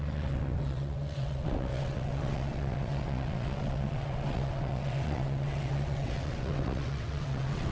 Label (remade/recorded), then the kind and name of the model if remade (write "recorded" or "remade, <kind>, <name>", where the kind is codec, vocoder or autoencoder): remade, vocoder, WaveNeXt